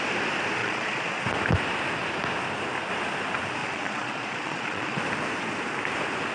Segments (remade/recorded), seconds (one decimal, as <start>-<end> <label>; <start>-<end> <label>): 0.0-0.6 recorded; 0.6-1.2 remade; 1.2-3.6 recorded; 3.6-5.0 remade; 5.0-6.3 recorded